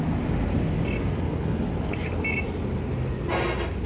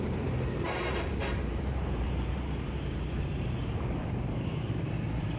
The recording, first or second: first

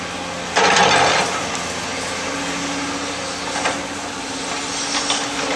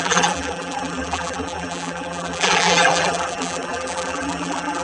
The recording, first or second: first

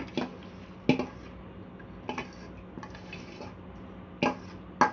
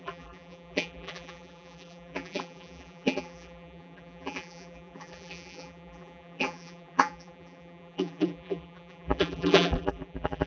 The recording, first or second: first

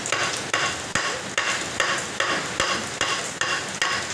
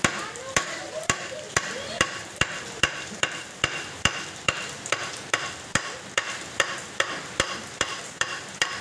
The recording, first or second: first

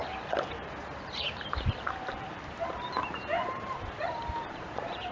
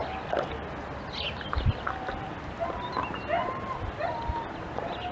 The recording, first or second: second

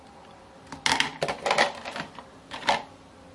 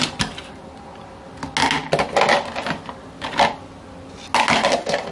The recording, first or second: second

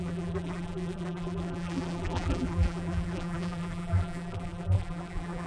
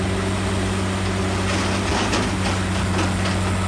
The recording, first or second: second